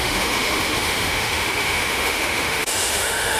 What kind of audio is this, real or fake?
fake